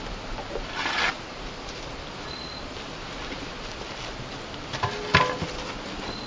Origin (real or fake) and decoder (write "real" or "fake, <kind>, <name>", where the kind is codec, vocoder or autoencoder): real